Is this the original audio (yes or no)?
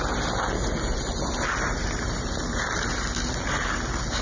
yes